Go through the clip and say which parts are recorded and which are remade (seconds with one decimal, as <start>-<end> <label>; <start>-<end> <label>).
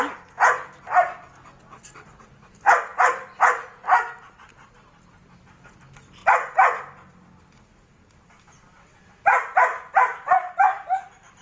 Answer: 0.0-11.4 recorded